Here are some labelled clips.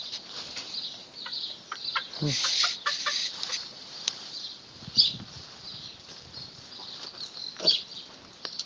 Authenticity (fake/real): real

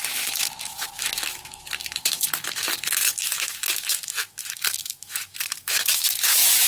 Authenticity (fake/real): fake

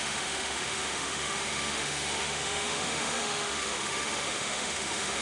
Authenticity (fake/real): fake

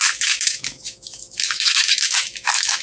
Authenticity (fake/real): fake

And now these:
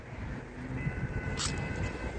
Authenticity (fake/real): real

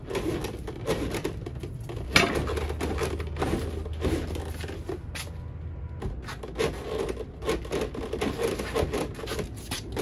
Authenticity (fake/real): real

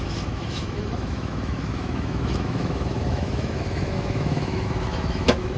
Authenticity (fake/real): fake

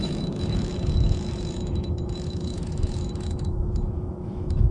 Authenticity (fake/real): fake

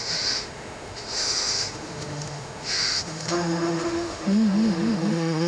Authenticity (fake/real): fake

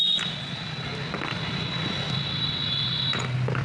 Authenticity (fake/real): real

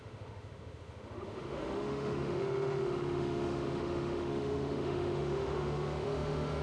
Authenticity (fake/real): fake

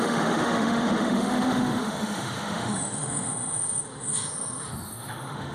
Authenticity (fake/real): fake